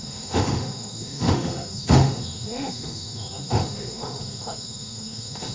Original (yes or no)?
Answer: no